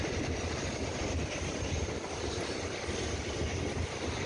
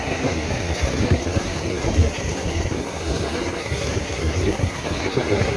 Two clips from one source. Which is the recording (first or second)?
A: first